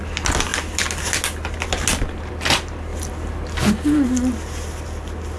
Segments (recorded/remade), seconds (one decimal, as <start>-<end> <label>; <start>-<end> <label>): 0.0-5.4 recorded